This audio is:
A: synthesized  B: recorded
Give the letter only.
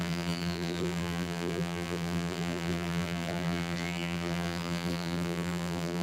A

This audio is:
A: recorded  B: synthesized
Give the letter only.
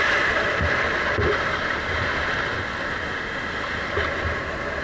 A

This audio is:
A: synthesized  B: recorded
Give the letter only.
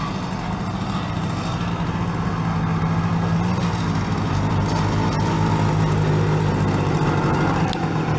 B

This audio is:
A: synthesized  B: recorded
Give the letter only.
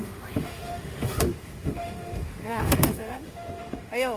A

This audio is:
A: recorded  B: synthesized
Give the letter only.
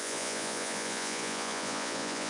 B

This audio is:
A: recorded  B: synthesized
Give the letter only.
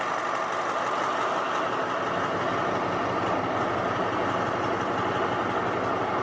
A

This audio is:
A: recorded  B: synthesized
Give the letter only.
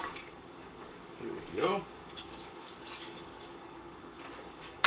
B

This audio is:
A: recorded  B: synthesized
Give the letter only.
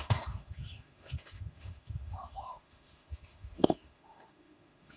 B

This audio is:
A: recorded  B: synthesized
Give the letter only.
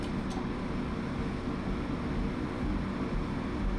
A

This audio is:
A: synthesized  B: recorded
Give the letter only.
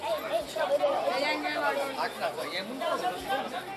B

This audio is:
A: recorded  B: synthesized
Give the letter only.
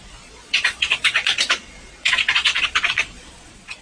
B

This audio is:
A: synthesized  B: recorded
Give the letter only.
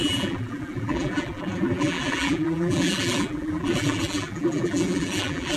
A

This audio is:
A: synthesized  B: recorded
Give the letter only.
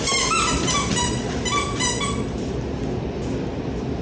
B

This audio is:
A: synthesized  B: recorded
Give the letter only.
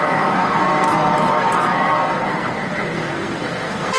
A